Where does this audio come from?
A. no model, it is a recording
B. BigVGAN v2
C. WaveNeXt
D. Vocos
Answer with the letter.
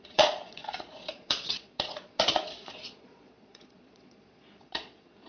D